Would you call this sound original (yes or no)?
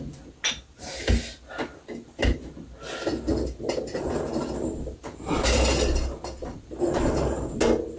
yes